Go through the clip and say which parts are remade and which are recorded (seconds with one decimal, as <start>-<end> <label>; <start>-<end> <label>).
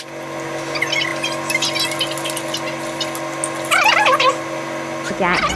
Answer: 0.0-5.6 recorded